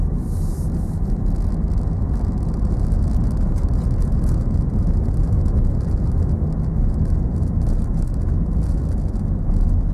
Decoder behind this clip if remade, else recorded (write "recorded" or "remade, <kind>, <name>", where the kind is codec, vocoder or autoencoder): recorded